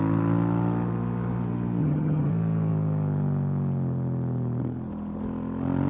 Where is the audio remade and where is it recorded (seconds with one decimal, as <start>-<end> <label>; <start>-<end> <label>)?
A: 0.0-1.8 recorded; 1.8-2.3 remade; 2.3-5.9 recorded